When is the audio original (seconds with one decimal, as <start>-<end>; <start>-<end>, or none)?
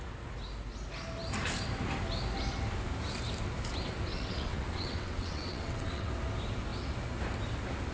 0.0-4.1; 6.1-7.9